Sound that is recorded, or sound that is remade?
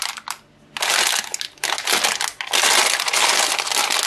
recorded